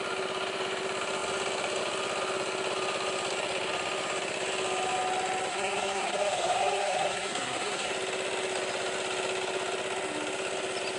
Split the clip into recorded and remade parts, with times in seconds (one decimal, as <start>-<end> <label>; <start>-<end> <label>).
0.0-5.5 recorded; 5.5-7.9 remade; 7.9-11.0 recorded